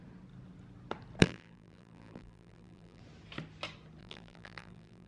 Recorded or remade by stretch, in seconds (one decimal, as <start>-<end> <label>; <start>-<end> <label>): 0.0-1.2 recorded; 1.2-3.0 remade; 3.0-4.0 recorded; 4.0-5.1 remade